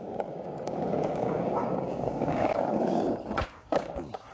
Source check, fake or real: fake